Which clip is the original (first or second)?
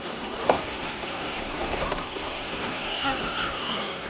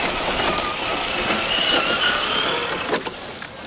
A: second